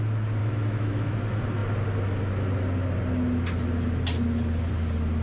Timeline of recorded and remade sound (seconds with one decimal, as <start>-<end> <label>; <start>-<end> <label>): 0.0-0.4 recorded; 0.4-1.1 remade; 1.1-5.2 recorded